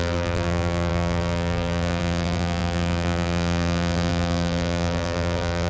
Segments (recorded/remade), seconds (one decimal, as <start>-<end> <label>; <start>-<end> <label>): 0.0-5.7 remade